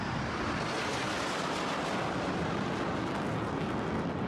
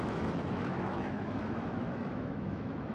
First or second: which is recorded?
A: first